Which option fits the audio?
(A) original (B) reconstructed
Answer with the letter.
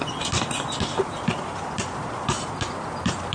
A